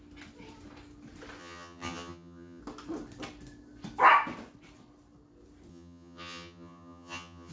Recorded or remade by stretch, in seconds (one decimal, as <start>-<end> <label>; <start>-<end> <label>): 0.0-1.4 recorded; 1.4-2.6 remade; 2.6-5.7 recorded; 5.7-7.5 remade

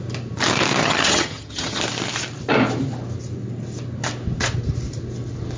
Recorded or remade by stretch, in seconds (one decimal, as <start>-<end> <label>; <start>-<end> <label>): 0.0-0.8 recorded; 0.8-1.8 remade; 1.8-5.6 recorded

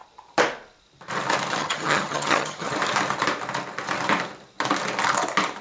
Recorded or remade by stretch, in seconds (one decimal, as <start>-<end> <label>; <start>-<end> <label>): 0.0-1.6 recorded; 1.6-2.7 remade; 2.7-5.6 recorded

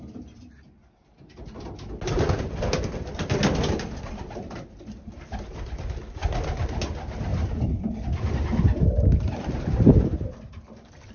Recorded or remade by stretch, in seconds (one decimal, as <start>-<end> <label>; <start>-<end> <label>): 0.0-11.1 recorded